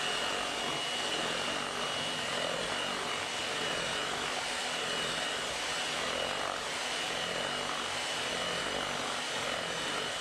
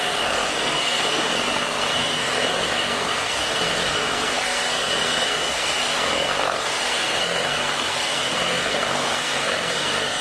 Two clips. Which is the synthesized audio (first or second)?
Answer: second